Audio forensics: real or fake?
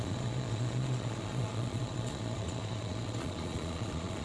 fake